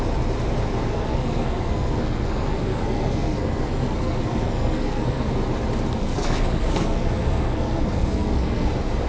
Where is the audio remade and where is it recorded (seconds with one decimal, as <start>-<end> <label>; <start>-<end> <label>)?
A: 0.0-0.9 recorded; 0.9-5.3 remade; 5.3-6.0 recorded; 6.0-8.7 remade; 8.7-9.1 recorded